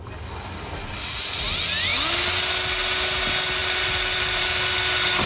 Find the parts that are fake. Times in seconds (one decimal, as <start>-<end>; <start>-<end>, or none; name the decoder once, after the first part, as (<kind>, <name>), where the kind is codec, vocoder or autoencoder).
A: none